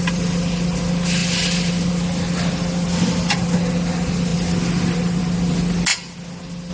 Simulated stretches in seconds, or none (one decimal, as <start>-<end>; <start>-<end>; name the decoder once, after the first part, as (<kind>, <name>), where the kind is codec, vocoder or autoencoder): none